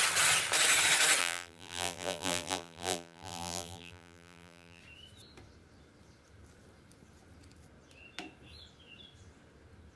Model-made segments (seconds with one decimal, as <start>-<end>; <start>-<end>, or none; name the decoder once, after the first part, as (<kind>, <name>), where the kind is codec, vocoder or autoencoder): 1.2-4.8 (vocoder, BigVGAN v2)